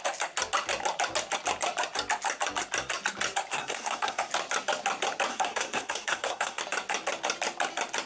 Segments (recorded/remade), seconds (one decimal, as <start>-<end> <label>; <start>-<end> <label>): 0.0-3.5 recorded; 3.5-4.3 remade; 4.3-5.3 recorded; 5.3-6.6 remade; 6.6-8.1 recorded